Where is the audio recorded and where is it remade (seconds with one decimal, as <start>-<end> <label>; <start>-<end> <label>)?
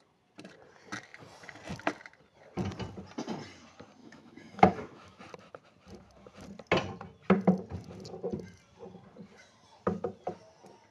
0.0-4.0 recorded; 4.0-5.2 remade; 5.2-10.9 recorded